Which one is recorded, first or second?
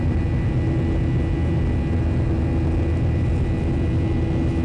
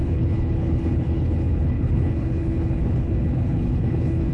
first